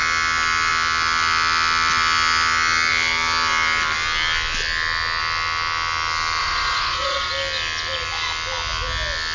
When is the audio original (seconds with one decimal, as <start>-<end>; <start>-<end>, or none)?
0.0-6.4; 7.3-9.3